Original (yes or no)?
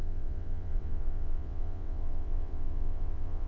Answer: no